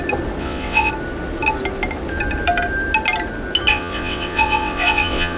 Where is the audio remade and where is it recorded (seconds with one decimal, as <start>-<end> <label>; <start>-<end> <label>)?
0.0-0.4 recorded; 0.4-0.9 remade; 0.9-3.7 recorded; 3.7-5.4 remade